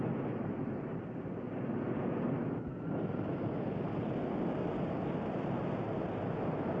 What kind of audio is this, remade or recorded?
recorded